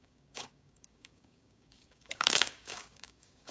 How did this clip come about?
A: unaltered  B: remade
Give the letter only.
B